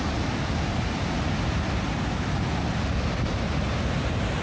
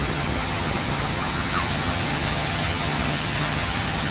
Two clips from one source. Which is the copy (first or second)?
second